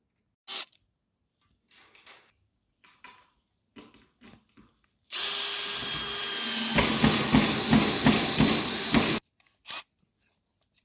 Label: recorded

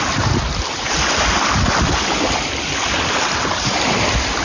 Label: recorded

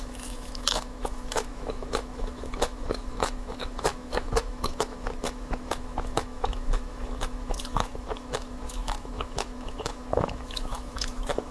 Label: remade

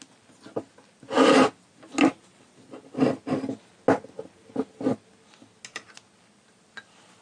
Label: recorded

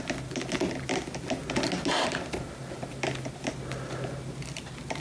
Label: recorded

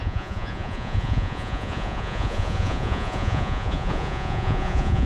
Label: remade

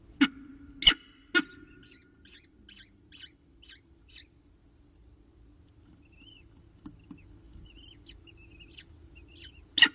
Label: recorded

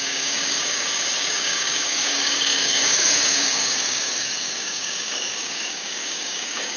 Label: remade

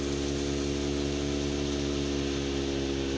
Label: recorded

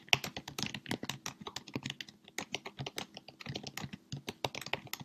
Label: recorded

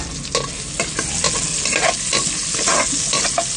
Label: recorded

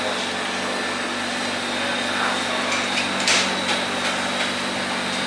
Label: recorded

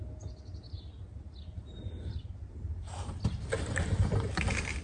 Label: recorded